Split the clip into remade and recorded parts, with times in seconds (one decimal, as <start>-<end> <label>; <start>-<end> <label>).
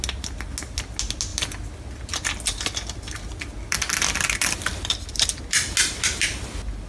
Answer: 0.0-6.9 recorded